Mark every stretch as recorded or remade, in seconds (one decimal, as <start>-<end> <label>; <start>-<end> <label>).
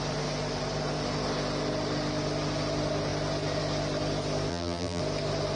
0.0-4.5 recorded; 4.5-5.0 remade; 5.0-5.6 recorded